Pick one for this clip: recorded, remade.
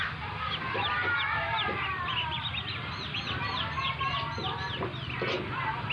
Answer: recorded